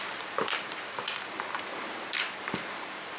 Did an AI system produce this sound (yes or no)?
yes